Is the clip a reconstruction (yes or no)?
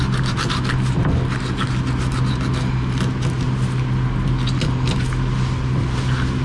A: no